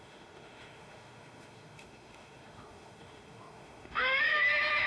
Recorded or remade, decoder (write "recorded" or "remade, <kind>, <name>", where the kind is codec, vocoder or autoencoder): remade, autoencoder, DAC-VAE